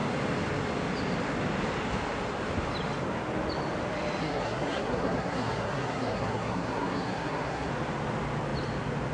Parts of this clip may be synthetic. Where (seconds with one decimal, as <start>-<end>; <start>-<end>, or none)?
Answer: 4.2-7.7